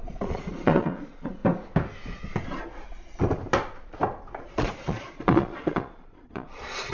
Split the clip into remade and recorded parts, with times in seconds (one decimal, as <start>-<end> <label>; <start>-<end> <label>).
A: 0.0-1.4 remade; 1.4-4.4 recorded; 4.4-6.9 remade